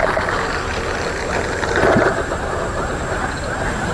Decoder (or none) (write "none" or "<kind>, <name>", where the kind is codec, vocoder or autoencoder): none